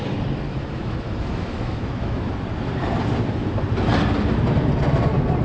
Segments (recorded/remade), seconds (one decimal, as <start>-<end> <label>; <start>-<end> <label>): 0.0-0.5 recorded; 0.5-2.2 remade; 2.2-5.4 recorded